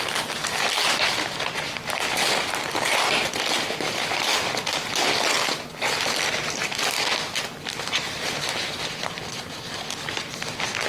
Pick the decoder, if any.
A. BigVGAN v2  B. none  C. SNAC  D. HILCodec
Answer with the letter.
B